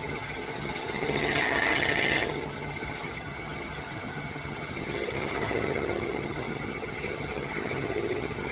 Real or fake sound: fake